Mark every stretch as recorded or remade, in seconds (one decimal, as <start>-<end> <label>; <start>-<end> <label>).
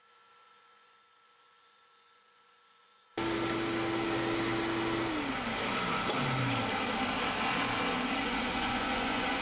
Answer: 0.0-3.1 remade; 3.1-8.2 recorded; 8.2-9.4 remade